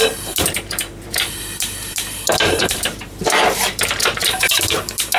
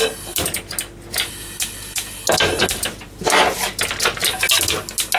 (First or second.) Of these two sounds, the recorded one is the second